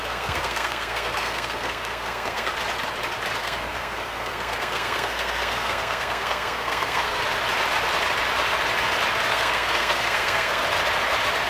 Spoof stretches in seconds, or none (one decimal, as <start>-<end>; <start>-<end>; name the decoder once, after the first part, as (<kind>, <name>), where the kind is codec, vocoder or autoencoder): 0.0-2.5 (codec, SNAC); 3.4-7.2; 9.3-10.6